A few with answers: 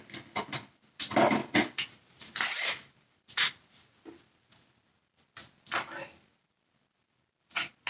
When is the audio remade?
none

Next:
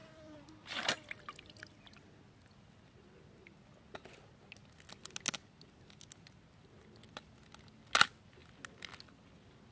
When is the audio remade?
none

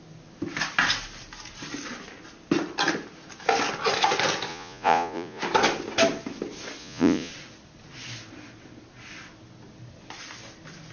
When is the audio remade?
4.5-5.4 (vocoder, Vocos); 6.8-7.3

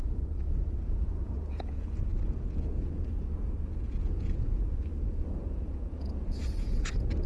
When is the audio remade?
0.0-7.3 (vocoder, Vocos)